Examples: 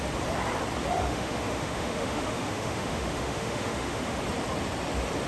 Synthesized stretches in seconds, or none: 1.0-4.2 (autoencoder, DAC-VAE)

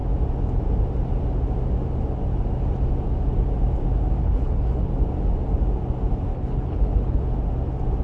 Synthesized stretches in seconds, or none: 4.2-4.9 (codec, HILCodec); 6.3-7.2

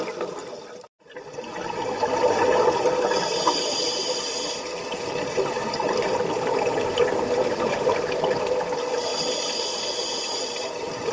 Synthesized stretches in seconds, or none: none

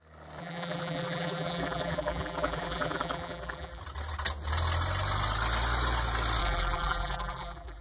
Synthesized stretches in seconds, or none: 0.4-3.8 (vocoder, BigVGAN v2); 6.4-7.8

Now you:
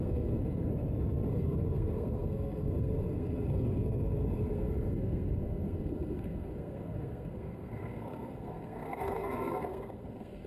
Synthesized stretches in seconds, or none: 0.0-0.7 (codec, SNAC); 1.3-10.5

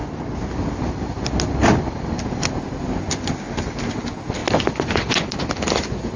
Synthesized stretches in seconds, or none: none

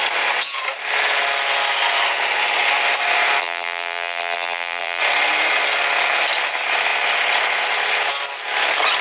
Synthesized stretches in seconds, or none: 3.4-5.0 (vocoder, BigVGAN v2)

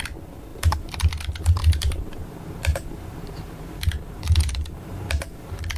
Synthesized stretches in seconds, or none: 0.5-1.1 (vocoder, BigVGAN v2); 1.6-5.1